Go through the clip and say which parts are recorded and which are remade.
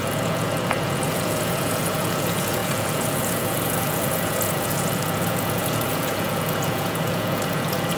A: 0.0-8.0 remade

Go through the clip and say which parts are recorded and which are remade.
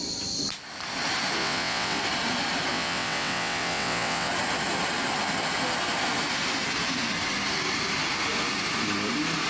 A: 0.0-1.4 recorded; 1.4-2.0 remade; 2.0-2.7 recorded; 2.7-4.3 remade; 4.3-9.5 recorded